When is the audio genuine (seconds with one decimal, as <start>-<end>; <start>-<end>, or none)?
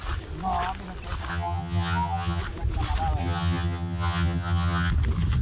0.0-1.3; 2.4-3.2; 4.9-5.4